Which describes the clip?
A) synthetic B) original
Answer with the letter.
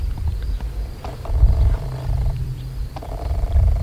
A